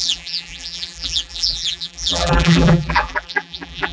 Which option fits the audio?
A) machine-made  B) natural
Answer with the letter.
A